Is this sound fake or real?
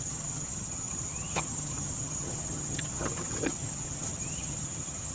fake